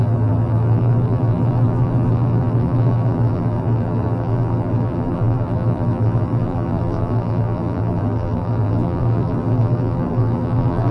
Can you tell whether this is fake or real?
fake